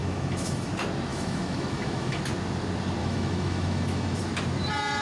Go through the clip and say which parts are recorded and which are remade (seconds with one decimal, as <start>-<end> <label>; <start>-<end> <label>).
0.0-0.7 remade; 0.7-1.1 recorded; 1.1-2.2 remade; 2.2-3.0 recorded; 3.0-4.2 remade; 4.2-5.0 recorded